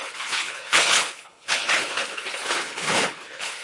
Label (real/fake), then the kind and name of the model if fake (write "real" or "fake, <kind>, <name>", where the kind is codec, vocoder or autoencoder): fake, codec, HILCodec